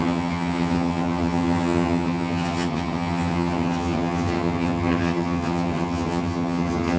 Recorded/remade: remade